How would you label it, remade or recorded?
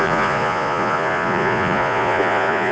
remade